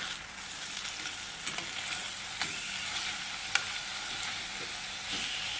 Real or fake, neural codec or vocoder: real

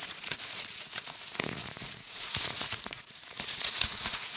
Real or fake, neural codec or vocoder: fake, vocoder, Vocos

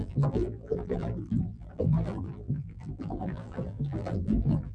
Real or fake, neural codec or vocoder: fake, vocoder, BigVGAN v2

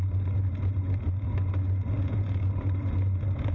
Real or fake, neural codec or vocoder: real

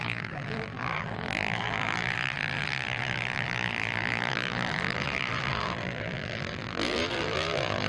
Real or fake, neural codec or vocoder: fake, vocoder, BigVGAN v2